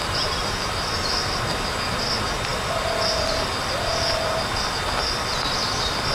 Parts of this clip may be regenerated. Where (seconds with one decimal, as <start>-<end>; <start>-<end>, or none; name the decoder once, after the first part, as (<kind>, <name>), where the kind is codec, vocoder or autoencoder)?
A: none